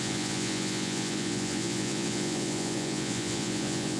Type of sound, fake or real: fake